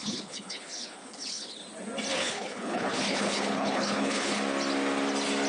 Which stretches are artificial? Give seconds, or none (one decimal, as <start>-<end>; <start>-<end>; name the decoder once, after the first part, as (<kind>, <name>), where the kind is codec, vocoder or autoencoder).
0.0-1.6 (codec, HILCodec); 2.1-4.4